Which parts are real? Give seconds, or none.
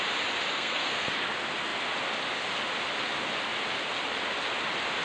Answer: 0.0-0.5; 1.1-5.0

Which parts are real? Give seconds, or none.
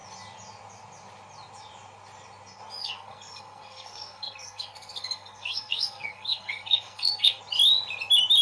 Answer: 0.0-2.8; 7.4-8.4